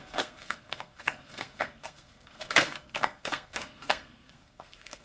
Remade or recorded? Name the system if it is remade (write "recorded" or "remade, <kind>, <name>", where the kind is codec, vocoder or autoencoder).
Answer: remade, codec, SNAC